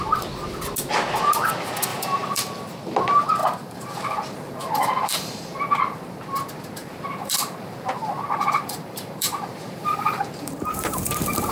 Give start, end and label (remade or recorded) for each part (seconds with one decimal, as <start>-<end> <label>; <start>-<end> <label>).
0.0-1.9 recorded; 1.9-2.6 remade; 2.6-3.4 recorded; 3.4-5.8 remade; 5.8-6.8 recorded; 6.8-11.5 remade